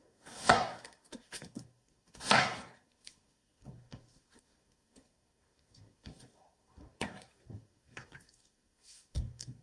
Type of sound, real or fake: fake